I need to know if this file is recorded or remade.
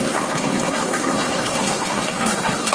remade